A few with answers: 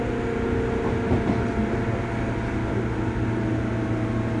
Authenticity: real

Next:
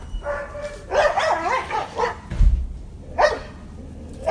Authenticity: real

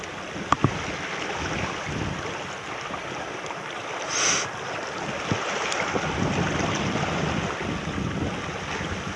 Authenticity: real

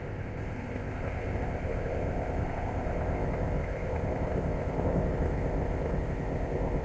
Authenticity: fake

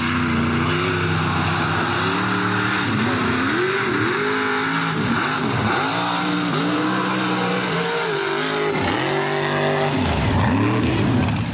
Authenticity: real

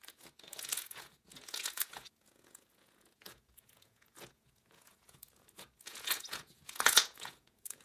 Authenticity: fake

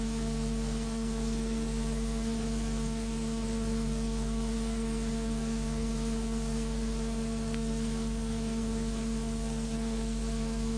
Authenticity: fake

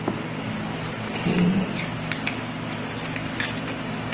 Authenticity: real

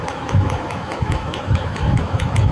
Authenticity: fake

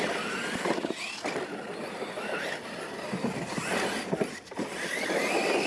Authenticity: real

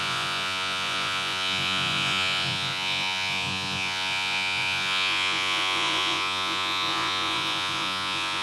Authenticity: fake